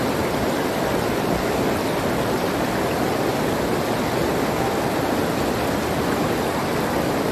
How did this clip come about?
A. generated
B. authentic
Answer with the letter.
B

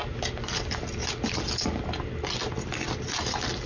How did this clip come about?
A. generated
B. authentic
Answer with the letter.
B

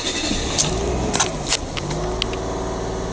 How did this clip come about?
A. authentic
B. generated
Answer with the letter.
A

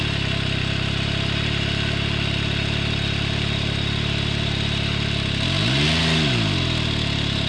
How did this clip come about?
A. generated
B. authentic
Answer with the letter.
B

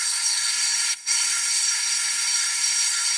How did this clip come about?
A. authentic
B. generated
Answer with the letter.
B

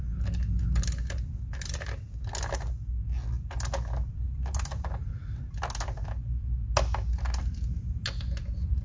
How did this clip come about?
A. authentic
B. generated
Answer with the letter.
A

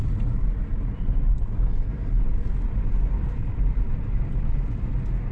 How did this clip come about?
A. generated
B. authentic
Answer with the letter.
B